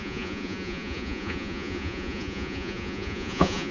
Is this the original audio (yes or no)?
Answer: no